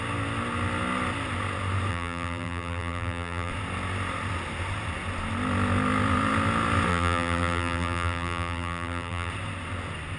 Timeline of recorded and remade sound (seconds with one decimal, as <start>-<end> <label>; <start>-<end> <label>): 0.0-1.9 recorded; 1.9-3.5 remade; 3.5-6.9 recorded; 6.9-9.3 remade; 9.3-10.2 recorded